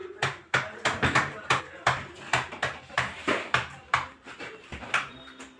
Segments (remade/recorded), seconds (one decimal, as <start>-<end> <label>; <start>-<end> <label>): 0.0-1.6 remade; 1.6-2.3 recorded; 2.3-5.6 remade